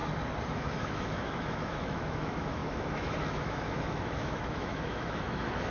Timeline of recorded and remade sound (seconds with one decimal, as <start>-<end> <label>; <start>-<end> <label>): 0.0-0.5 recorded; 0.5-5.7 remade